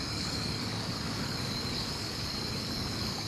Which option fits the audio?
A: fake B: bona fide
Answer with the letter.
A